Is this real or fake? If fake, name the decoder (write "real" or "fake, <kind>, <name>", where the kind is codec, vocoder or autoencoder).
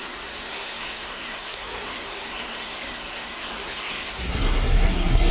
fake, codec, SNAC